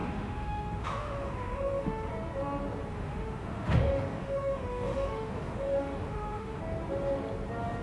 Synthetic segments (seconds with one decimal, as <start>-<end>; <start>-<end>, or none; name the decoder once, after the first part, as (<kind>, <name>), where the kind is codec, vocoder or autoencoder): 0.0-2.1 (autoencoder, DAC-VAE); 2.9-6.6